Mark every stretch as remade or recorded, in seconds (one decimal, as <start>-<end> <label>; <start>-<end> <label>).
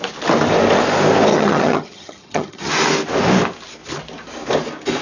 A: 0.0-1.3 recorded; 1.3-2.7 remade; 2.7-5.0 recorded